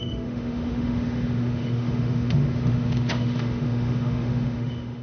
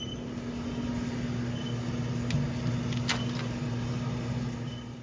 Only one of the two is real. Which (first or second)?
second